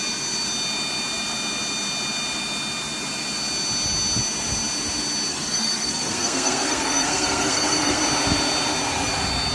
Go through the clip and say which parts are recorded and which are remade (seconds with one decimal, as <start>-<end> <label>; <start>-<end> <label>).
0.0-5.3 recorded; 5.3-8.0 remade; 8.0-9.5 recorded